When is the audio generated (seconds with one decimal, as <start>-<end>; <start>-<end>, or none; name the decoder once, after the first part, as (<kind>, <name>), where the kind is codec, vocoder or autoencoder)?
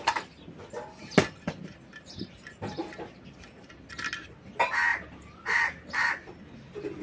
1.9-2.7 (vocoder, BigVGAN v2); 4.9-6.1